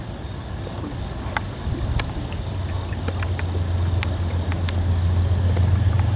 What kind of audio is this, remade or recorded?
recorded